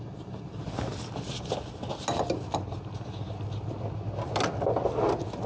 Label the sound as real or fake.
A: real